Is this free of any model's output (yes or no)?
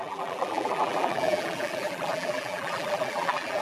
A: no